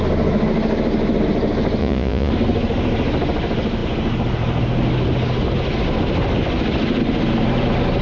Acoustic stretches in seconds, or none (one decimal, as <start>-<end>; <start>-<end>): 0.0-1.8; 2.3-8.0